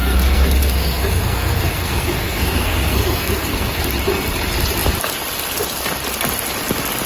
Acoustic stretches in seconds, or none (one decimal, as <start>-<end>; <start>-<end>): 3.8-7.1